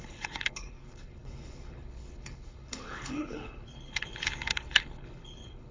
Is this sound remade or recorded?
remade